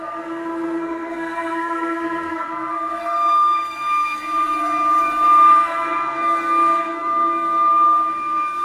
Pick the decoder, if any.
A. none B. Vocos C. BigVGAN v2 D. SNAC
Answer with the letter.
D